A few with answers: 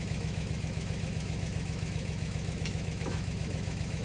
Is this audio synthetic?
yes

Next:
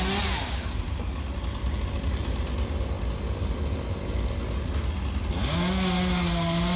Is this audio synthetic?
no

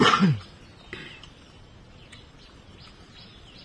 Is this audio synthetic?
no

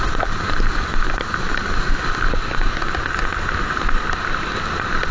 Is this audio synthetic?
no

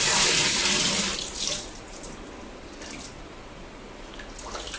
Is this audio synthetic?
yes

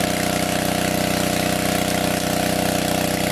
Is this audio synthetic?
no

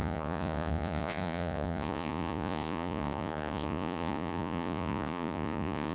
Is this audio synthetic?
yes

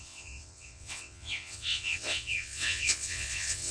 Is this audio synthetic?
yes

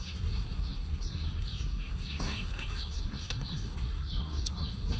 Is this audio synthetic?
yes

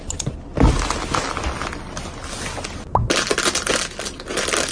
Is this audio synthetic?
no